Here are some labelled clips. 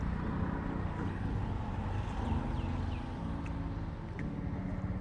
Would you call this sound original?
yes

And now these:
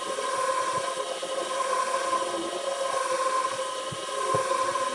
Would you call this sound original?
no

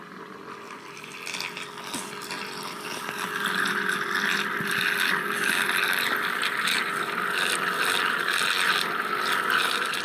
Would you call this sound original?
yes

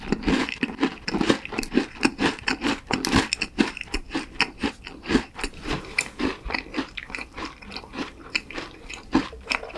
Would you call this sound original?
no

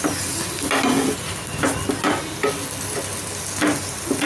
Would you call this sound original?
yes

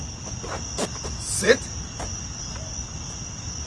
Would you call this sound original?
yes